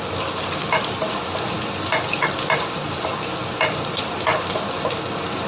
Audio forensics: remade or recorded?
recorded